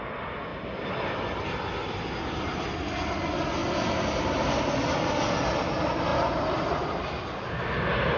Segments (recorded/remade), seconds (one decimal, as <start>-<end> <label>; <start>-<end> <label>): 0.0-8.2 recorded